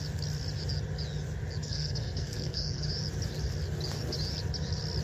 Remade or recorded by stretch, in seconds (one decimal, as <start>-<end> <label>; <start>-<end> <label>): 0.0-1.6 recorded; 1.6-2.9 remade; 2.9-5.0 recorded